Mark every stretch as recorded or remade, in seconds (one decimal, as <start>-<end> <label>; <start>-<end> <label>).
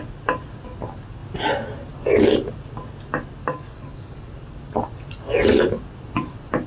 0.0-3.4 recorded; 3.4-4.3 remade; 4.3-6.7 recorded